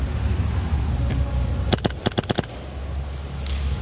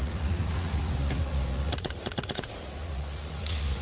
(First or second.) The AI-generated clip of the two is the second